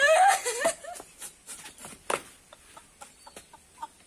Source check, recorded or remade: recorded